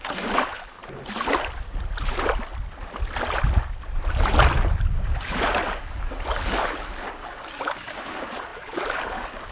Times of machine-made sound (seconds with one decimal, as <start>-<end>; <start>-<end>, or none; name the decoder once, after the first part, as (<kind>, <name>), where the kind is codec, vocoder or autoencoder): 0.0-0.8 (codec, DAC); 5.2-9.5